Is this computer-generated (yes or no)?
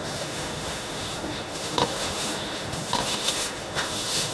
yes